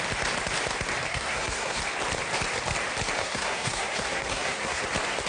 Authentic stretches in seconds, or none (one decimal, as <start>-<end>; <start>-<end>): 0.0-1.1; 1.8-3.2; 4.8-5.3